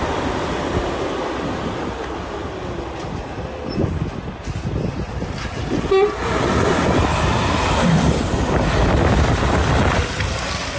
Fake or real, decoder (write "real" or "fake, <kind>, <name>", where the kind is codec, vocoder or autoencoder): real